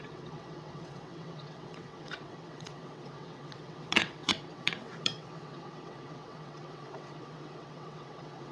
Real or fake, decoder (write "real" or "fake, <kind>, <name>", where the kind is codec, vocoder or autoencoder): fake, vocoder, WaveNeXt